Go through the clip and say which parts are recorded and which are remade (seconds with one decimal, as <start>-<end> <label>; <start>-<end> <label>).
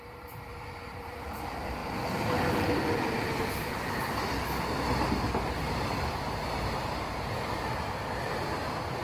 0.0-1.8 remade; 1.8-5.9 recorded; 5.9-9.0 remade